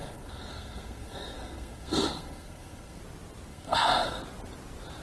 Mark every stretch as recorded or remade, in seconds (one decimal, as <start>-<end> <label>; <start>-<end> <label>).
0.0-3.0 remade; 3.0-3.5 recorded; 3.5-4.2 remade; 4.2-5.0 recorded